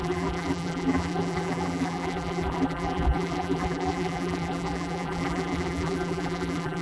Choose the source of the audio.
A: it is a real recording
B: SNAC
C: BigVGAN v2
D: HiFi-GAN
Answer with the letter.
C